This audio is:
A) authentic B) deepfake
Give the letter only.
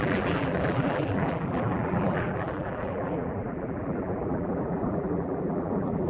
B